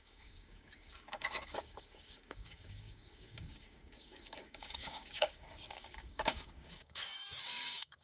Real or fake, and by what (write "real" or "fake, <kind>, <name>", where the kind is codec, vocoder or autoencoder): fake, codec, DAC